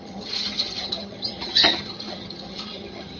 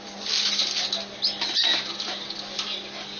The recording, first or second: second